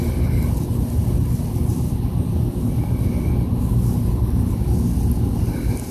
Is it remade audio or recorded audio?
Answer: recorded